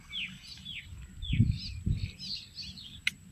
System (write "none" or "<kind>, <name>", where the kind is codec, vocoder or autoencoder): none